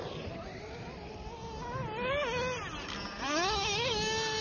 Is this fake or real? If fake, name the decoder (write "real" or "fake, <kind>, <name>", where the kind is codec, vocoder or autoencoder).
real